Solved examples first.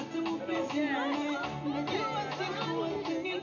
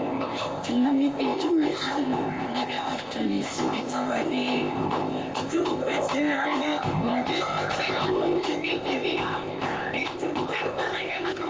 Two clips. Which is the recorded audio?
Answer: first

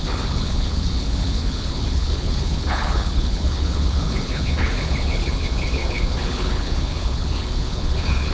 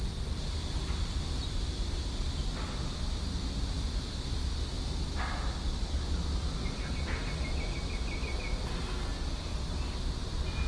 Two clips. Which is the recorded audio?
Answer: second